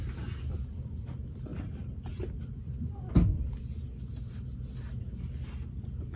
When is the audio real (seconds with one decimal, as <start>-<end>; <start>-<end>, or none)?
0.0-6.2